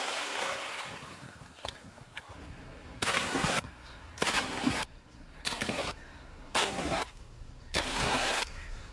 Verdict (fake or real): fake